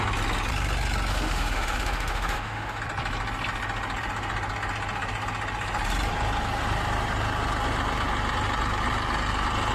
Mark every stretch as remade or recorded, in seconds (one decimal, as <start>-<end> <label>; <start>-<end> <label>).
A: 0.0-1.1 recorded; 1.1-2.8 remade; 2.8-9.7 recorded